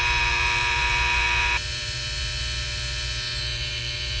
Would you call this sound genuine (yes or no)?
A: no